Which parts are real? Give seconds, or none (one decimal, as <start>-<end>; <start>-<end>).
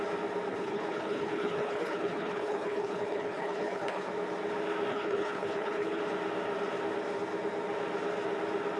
0.0-0.5; 4.1-4.9; 6.0-8.8